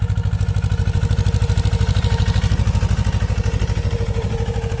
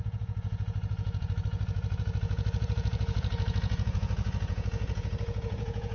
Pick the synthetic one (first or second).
second